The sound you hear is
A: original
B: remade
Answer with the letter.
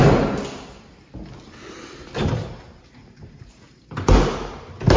A